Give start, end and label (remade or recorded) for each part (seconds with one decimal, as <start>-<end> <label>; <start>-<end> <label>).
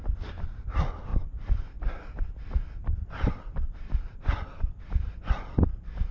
0.0-6.1 recorded